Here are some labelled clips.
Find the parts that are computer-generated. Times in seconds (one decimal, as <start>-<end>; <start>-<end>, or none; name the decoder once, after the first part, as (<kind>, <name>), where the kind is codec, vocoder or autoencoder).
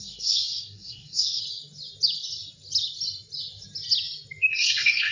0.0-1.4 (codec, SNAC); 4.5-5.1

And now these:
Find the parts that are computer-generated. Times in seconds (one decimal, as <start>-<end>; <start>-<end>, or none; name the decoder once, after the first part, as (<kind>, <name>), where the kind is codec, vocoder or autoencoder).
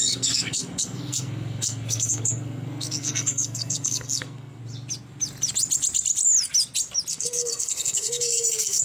0.0-4.6 (codec, SNAC); 7.1-8.8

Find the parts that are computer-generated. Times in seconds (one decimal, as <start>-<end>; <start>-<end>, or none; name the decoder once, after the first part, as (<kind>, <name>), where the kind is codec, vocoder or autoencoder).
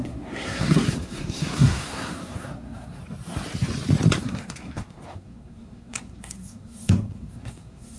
0.0-3.0 (codec, SNAC); 4.2-8.0